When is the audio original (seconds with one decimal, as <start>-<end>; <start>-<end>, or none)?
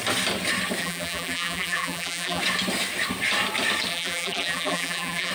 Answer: 0.0-0.8; 2.4-3.9